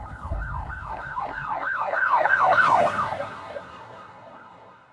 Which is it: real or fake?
fake